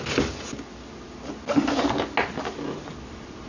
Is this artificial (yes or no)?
no